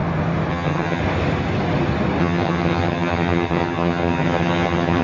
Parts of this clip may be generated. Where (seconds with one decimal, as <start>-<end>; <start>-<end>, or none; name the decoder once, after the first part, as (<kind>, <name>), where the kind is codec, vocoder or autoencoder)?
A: 0.5-1.0 (vocoder, HiFi-GAN); 2.2-5.0